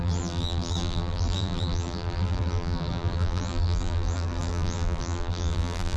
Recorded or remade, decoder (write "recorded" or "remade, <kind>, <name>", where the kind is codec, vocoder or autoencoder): remade, vocoder, BigVGAN v2